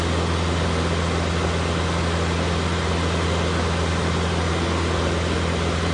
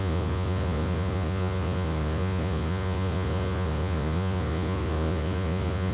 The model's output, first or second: second